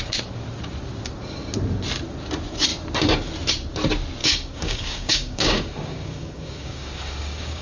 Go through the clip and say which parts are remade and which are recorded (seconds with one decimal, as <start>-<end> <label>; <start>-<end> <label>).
0.0-4.2 recorded; 4.2-7.6 remade